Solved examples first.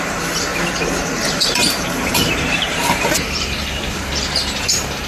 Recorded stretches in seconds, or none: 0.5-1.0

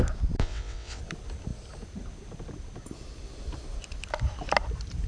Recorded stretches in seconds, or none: 0.0-0.4; 1.0-5.1